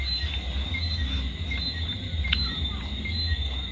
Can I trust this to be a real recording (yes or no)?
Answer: yes